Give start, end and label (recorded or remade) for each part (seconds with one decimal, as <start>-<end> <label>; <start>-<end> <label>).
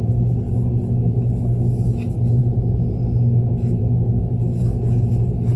0.0-5.6 recorded